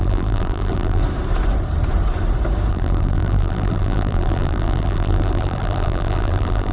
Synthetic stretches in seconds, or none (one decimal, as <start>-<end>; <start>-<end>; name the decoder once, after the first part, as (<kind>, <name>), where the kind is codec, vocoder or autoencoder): 0.0-1.0 (vocoder, BigVGAN v2); 2.7-6.7